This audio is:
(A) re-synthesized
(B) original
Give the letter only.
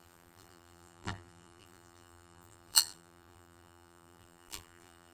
A